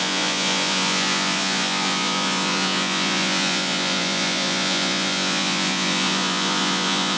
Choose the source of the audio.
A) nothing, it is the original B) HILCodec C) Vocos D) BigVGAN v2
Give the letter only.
C